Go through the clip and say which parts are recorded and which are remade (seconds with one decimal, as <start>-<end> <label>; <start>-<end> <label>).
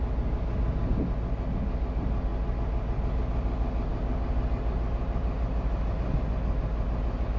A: 0.0-7.4 recorded